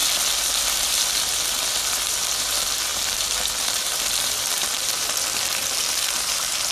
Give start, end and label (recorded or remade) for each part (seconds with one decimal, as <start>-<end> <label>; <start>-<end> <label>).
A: 0.0-0.6 recorded; 0.6-6.7 remade